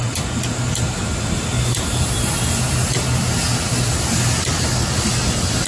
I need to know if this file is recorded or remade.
recorded